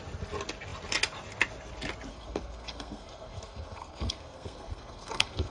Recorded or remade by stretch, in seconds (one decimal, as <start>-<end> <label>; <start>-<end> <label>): 0.0-2.1 recorded; 2.1-5.5 remade